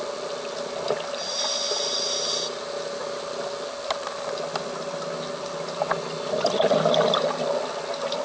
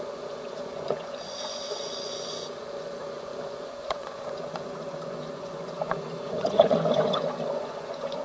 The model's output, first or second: second